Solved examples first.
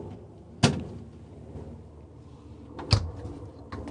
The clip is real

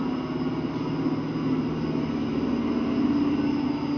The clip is real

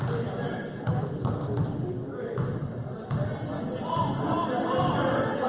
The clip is real